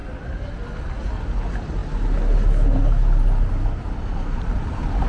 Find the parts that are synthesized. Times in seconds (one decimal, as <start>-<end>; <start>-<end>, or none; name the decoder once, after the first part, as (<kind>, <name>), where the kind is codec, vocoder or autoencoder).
none